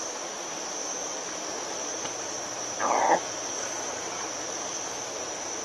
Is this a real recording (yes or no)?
no